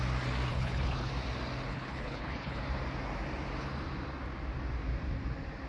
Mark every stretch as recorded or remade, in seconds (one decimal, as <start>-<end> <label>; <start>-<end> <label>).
0.0-0.5 recorded; 0.5-1.1 remade; 1.1-1.7 recorded; 1.7-2.6 remade; 2.6-5.7 recorded